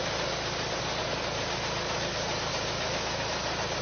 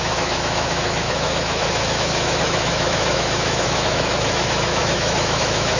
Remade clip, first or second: second